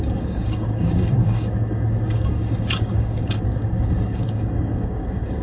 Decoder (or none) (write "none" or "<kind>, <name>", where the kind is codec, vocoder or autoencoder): codec, DAC